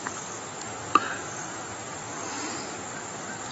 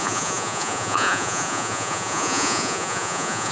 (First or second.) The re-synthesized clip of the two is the second